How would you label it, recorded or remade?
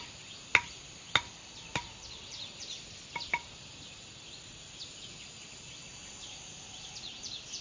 recorded